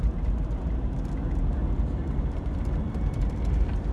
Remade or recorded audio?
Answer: recorded